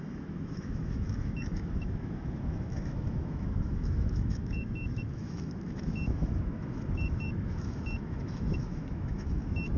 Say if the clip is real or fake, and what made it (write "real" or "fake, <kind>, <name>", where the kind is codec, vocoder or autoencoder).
fake, autoencoder, DAC-VAE